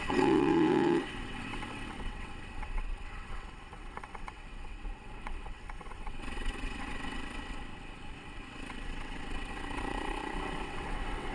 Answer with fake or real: fake